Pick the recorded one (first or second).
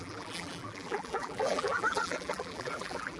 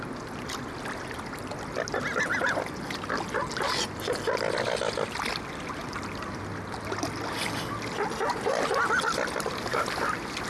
second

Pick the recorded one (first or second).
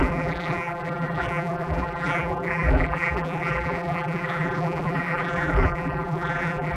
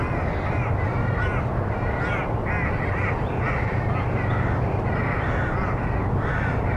second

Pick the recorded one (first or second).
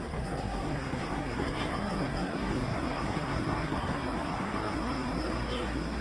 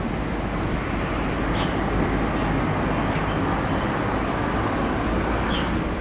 second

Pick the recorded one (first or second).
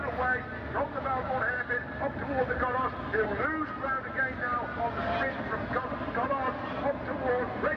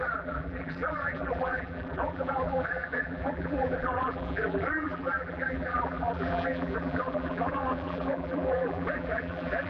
first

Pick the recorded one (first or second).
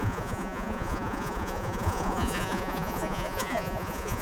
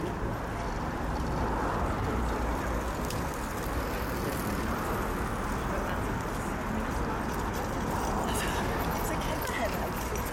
second